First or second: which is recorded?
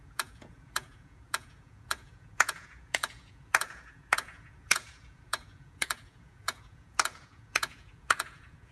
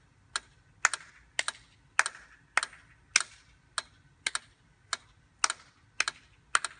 second